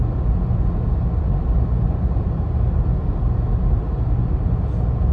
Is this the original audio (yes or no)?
yes